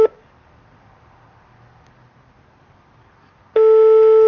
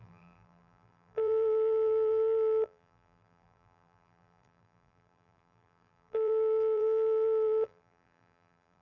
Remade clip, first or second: second